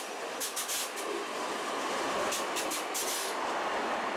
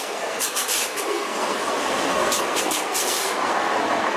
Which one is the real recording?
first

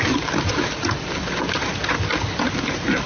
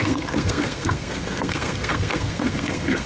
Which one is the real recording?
first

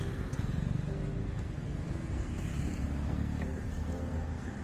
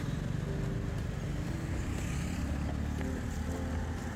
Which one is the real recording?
second